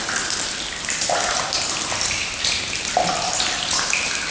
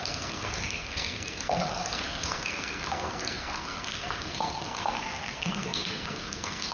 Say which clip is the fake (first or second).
second